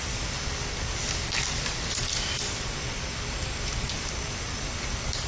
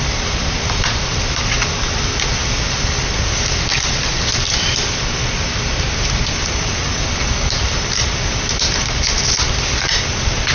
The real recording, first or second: first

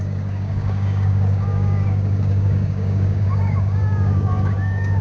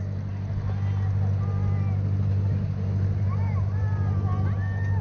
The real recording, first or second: second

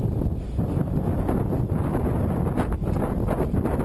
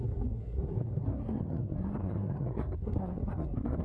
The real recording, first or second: first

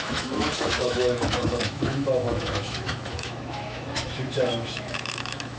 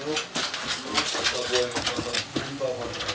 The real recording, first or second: second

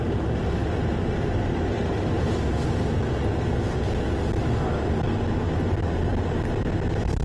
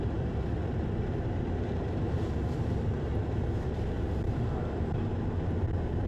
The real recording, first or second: first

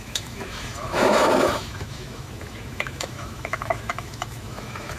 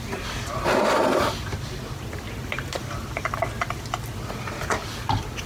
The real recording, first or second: second